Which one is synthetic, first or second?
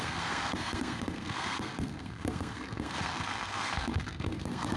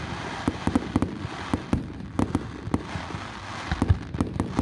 first